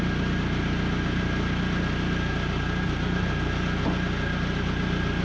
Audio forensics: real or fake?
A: real